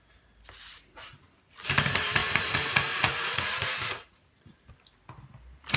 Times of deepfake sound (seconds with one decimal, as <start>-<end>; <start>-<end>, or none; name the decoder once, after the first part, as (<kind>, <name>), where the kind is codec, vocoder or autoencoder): 2.2-4.4 (vocoder, Vocos)